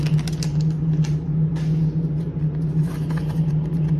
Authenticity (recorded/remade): recorded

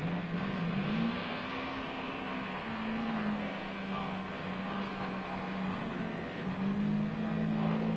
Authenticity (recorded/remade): remade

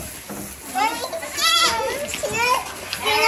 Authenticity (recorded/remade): recorded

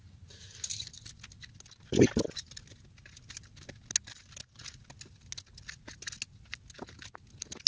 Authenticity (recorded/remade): recorded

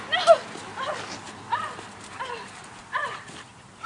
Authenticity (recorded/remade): recorded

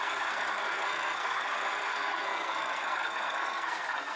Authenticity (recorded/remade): remade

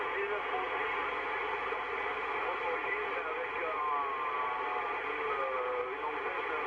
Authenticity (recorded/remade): recorded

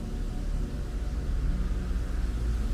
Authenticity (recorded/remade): recorded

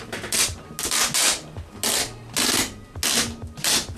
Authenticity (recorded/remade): recorded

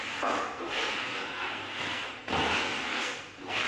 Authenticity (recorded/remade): remade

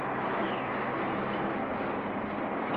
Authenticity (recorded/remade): recorded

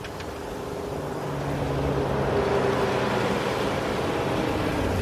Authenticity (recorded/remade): recorded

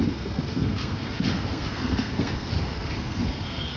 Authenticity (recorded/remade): remade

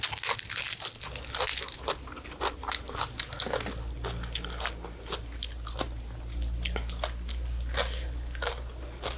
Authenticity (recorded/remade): recorded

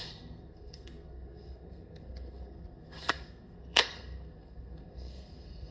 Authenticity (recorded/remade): remade